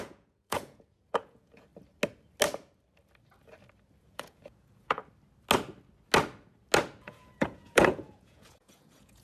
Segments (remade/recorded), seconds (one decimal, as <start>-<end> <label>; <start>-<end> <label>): 0.0-1.7 remade; 1.7-4.0 recorded; 4.0-5.0 remade; 5.0-7.0 recorded; 7.0-9.2 remade